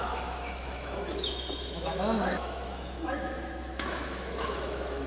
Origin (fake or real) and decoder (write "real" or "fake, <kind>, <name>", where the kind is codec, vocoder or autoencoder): fake, autoencoder, DAC-VAE